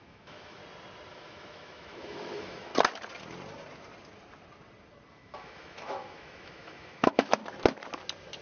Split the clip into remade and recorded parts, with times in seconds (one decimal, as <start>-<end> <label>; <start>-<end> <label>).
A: 0.0-0.6 remade; 0.6-1.1 recorded; 1.1-2.7 remade; 2.7-5.1 recorded; 5.1-7.4 remade; 7.4-8.4 recorded